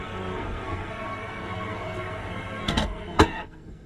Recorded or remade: remade